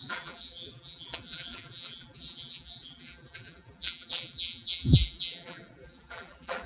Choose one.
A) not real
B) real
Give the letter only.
A